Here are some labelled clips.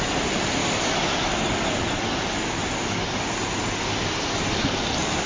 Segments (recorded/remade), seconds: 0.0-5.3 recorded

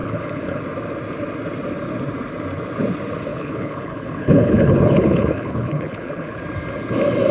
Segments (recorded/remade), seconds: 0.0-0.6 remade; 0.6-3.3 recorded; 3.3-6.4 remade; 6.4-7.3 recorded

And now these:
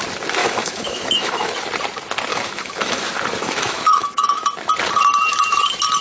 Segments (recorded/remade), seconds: 0.0-0.4 recorded; 0.4-1.6 remade; 1.6-2.3 recorded; 2.3-3.0 remade; 3.0-3.4 recorded; 3.4-4.4 remade; 4.4-6.0 recorded

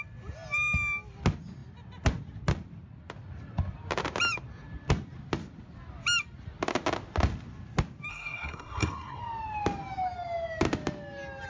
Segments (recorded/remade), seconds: 0.0-8.1 recorded; 8.1-9.2 remade; 9.2-11.5 recorded